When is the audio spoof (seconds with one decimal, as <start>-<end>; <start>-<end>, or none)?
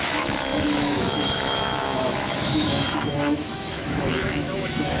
0.0-5.0